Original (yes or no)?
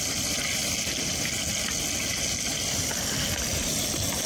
yes